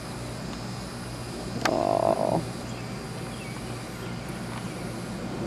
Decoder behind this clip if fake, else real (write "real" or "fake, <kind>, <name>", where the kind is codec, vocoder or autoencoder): real